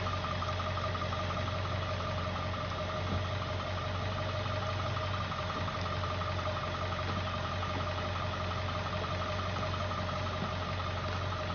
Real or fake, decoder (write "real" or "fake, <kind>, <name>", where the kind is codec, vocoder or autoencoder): real